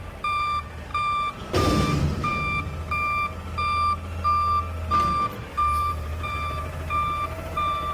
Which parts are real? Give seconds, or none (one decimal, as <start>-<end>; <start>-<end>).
2.3-5.8